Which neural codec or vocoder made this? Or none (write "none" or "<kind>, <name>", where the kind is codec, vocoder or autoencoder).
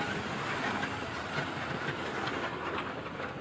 none